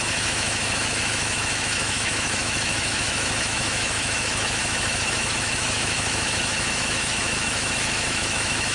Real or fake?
fake